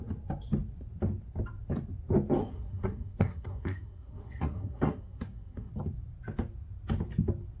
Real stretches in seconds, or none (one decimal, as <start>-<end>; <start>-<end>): 0.0-2.4; 5.7-7.6